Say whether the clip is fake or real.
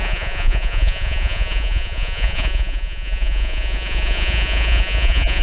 fake